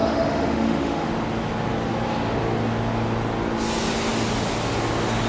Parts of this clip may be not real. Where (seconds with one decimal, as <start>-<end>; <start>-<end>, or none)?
0.0-1.1

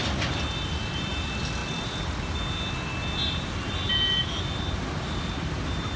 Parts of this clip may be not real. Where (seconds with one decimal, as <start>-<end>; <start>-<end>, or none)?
none

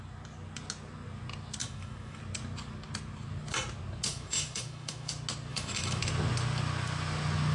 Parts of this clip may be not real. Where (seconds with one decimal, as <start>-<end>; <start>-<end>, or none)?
1.6-2.2; 4.1-5.1; 5.5-6.0

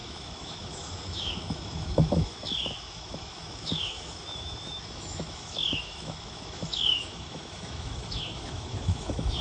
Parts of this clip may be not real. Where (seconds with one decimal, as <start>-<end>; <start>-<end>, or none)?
0.0-9.4

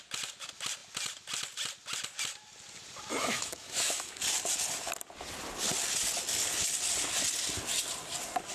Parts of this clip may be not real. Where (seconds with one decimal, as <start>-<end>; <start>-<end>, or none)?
3.2-4.2

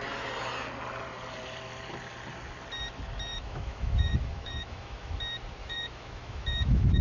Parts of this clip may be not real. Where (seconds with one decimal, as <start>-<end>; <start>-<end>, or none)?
3.3-5.1; 5.6-7.0

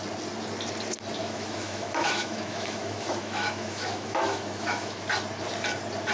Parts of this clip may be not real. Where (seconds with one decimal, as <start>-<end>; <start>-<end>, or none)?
1.2-4.9

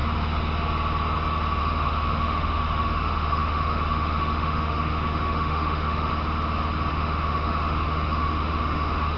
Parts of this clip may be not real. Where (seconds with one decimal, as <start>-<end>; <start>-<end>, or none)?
1.6-6.1; 6.9-9.2